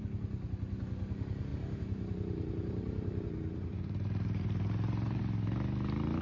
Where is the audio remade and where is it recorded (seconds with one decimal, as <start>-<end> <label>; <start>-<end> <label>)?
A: 0.0-1.5 recorded; 1.5-5.2 remade; 5.2-6.2 recorded